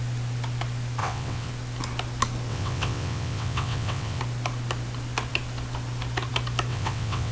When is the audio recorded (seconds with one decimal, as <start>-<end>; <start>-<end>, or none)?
0.0-1.0; 1.5-2.5; 4.2-6.7